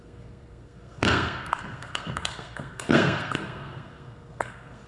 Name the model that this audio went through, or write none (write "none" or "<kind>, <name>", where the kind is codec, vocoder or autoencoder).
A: codec, SNAC